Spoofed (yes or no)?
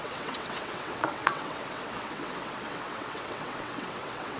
yes